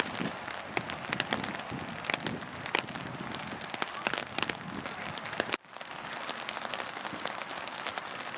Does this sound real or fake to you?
real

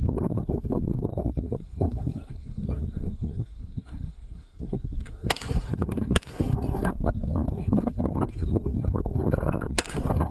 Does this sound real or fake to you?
fake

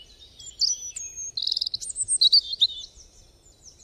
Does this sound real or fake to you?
real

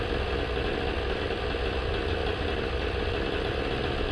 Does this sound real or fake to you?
real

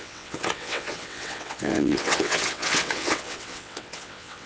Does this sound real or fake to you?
fake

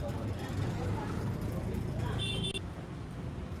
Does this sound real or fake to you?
real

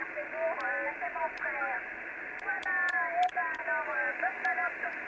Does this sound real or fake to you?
real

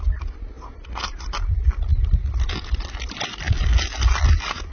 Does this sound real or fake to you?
real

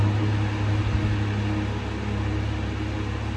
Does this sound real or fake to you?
real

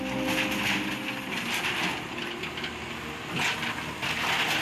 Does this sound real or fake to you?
real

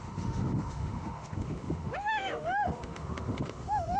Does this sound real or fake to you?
fake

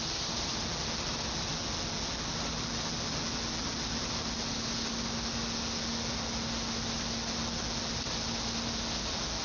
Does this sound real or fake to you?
real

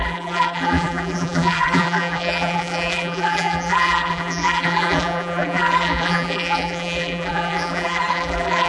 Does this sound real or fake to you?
fake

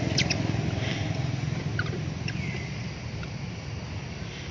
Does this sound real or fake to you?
real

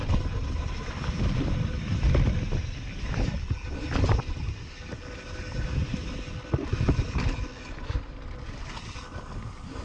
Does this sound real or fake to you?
real